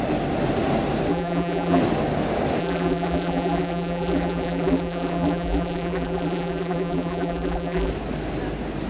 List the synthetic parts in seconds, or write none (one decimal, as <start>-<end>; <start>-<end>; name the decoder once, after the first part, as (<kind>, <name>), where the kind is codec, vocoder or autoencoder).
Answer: 1.1-1.8 (vocoder, BigVGAN v2); 2.6-7.9